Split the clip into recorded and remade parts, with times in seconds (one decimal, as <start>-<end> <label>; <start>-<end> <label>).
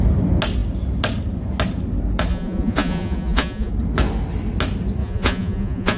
0.0-2.3 recorded; 2.3-3.7 remade; 3.7-5.0 recorded; 5.0-6.0 remade